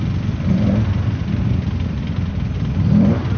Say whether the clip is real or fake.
real